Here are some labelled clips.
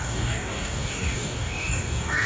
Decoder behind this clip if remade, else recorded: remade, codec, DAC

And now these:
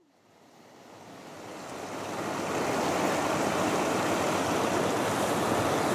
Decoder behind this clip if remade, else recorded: recorded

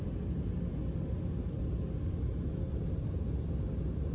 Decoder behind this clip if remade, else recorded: recorded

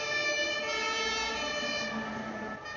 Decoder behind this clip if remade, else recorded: recorded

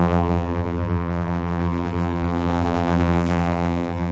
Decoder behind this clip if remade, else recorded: remade, vocoder, BigVGAN v2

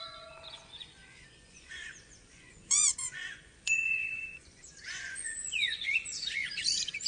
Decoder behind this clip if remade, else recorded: remade, vocoder, Vocos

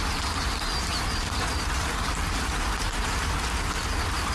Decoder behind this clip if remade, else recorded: recorded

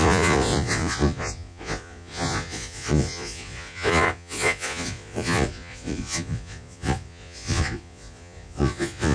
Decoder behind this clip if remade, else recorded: remade, vocoder, Vocos